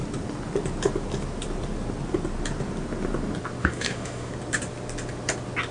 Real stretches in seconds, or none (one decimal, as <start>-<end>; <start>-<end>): 0.0-3.6; 4.3-5.7